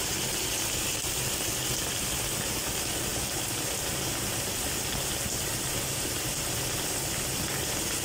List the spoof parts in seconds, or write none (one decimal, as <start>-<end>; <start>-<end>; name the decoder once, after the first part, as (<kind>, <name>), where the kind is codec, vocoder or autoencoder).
none